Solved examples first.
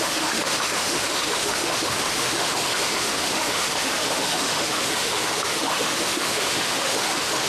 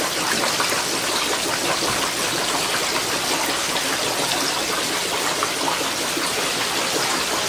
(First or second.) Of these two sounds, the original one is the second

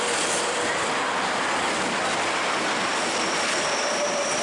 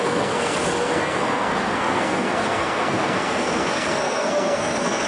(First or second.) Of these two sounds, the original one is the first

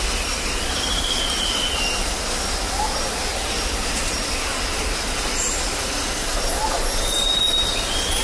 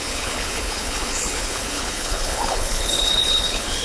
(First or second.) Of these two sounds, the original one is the first